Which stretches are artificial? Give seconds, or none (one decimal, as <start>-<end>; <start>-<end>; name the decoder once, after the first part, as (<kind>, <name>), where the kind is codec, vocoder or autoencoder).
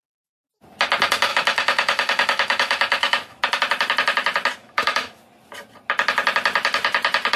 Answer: 1.3-3.4 (autoencoder, DAC-VAE); 4.6-5.2